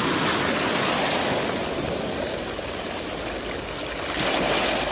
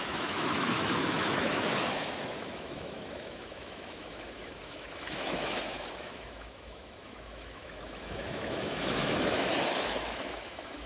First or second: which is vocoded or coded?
second